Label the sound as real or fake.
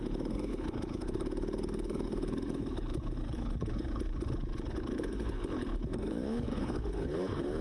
fake